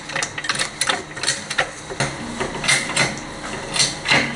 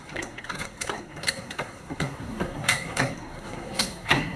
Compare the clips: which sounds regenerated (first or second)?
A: second